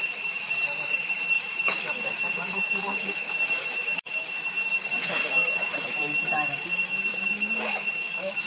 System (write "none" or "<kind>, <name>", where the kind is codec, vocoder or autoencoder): autoencoder, DAC-VAE